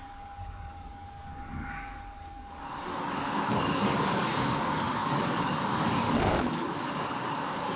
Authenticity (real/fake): fake